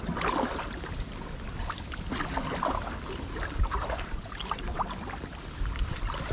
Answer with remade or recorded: remade